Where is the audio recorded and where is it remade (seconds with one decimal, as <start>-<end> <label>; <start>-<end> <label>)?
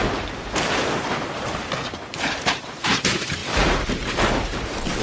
0.0-5.0 remade